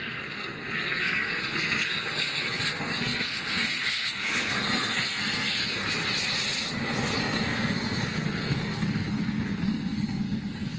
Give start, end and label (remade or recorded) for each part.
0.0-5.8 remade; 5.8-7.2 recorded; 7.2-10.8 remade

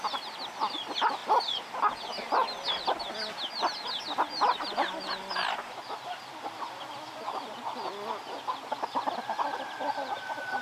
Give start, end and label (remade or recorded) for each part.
0.0-10.6 recorded

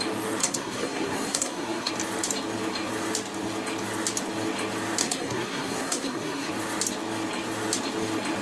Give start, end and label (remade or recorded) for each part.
0.0-0.4 recorded; 0.4-1.9 remade; 1.9-5.0 recorded; 5.0-6.5 remade; 6.5-8.4 recorded

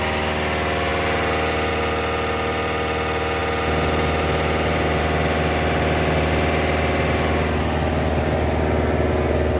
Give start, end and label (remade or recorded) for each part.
0.0-9.6 recorded

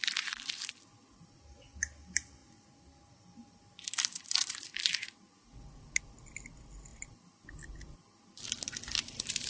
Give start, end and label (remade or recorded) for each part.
0.0-9.5 recorded

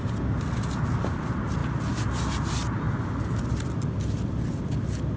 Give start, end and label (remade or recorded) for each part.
0.0-5.2 recorded

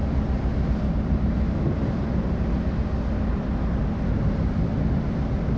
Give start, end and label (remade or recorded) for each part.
0.0-5.6 recorded